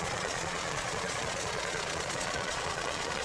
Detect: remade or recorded remade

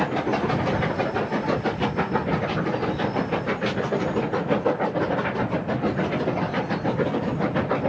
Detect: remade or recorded recorded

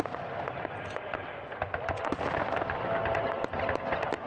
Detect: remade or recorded recorded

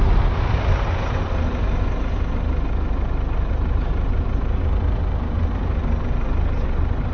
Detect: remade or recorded recorded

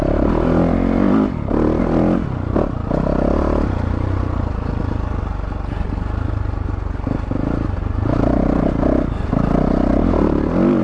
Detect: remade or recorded recorded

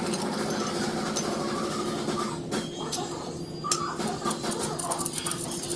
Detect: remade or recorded recorded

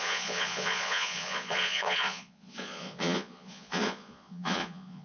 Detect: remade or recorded remade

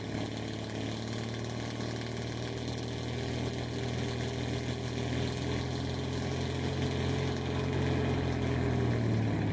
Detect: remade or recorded recorded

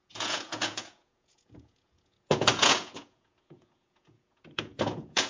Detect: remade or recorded remade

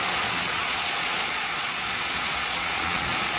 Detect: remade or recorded remade